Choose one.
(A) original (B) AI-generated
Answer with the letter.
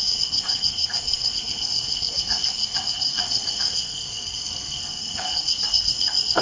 B